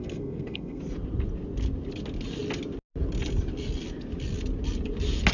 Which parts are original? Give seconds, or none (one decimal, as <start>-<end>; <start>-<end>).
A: 0.8-5.3